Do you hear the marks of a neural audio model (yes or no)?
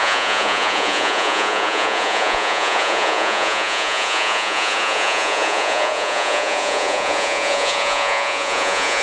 yes